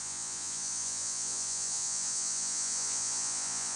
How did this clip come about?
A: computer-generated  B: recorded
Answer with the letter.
A